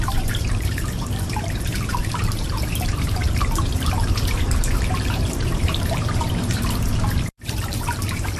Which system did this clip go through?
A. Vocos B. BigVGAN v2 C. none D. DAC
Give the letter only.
B